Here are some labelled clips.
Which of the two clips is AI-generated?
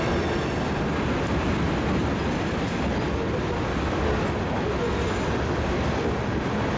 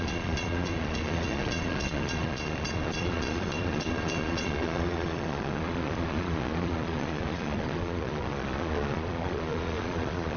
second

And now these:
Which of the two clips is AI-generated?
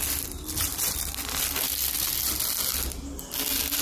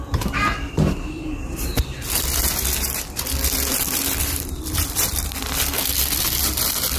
second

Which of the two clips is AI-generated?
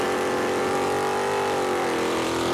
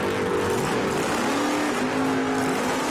first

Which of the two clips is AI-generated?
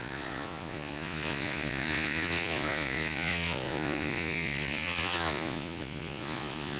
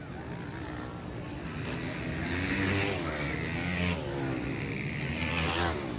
first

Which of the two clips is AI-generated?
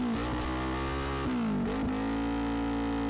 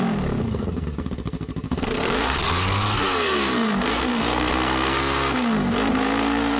second